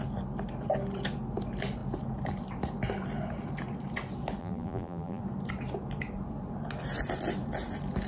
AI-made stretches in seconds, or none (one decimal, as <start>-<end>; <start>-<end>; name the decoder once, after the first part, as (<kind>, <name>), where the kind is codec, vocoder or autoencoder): 4.4-5.2 (vocoder, BigVGAN v2)